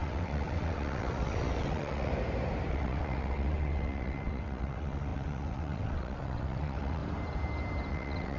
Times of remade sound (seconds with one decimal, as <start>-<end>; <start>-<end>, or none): 0.0-2.1; 2.7-7.0; 7.9-8.4